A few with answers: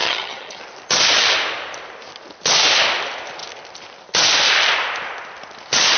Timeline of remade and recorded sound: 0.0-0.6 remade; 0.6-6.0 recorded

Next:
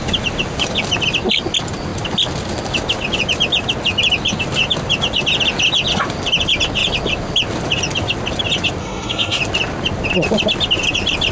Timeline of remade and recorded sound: 0.0-8.8 recorded; 8.8-9.4 remade; 9.4-11.3 recorded

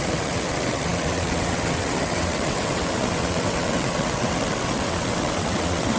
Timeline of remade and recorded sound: 0.0-6.0 remade

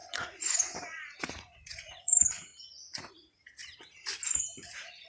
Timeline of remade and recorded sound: 0.0-2.5 remade; 2.5-3.1 recorded; 3.1-3.6 remade; 3.6-4.4 recorded; 4.4-5.1 remade

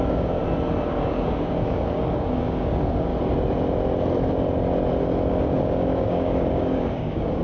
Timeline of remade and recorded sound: 0.0-0.4 remade; 0.4-0.9 recorded; 0.9-3.1 remade; 3.1-5.3 recorded; 5.3-7.4 remade